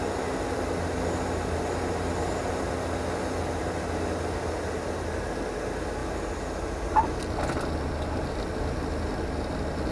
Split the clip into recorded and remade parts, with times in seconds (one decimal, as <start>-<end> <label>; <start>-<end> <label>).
0.0-9.9 recorded